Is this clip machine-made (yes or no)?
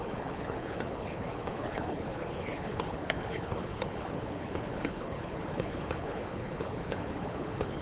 yes